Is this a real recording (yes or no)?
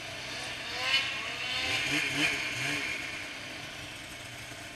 yes